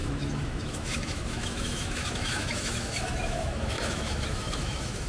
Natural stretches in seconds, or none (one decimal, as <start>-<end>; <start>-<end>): none